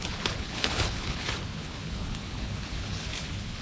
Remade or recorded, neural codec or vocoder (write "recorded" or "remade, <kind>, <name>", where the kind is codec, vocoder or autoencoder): remade, codec, HILCodec